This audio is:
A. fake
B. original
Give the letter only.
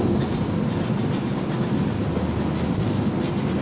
B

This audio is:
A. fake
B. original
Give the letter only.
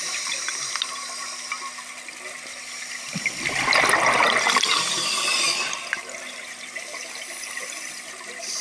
B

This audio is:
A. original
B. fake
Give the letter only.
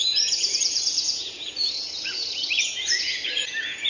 B